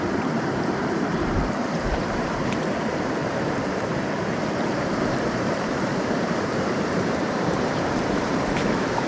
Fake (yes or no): yes